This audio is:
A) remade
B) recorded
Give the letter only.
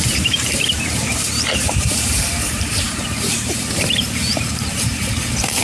A